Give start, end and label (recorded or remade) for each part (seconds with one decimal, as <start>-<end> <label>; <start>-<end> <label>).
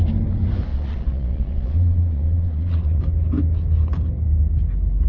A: 0.0-0.7 recorded; 0.7-3.0 remade; 3.0-5.1 recorded